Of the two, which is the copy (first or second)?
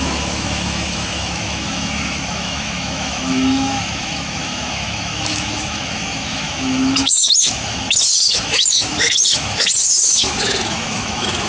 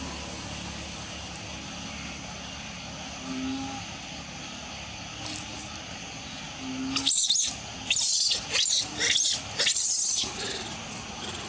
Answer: first